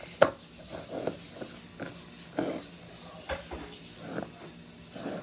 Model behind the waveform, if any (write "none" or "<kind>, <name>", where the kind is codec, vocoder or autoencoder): none